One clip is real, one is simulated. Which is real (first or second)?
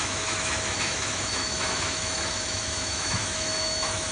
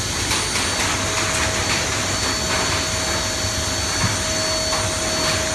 second